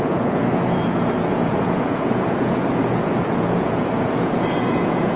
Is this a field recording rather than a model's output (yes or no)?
no